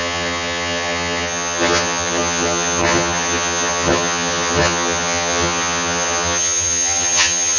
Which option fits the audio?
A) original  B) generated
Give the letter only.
B